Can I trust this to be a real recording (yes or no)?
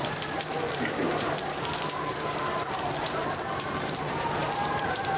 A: no